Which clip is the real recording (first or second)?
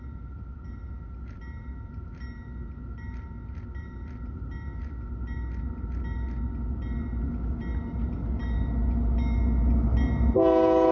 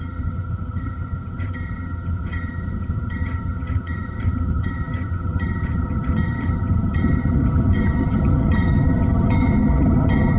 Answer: first